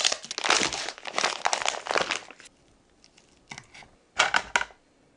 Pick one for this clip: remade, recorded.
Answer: recorded